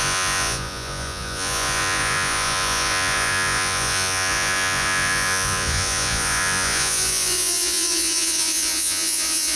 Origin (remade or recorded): remade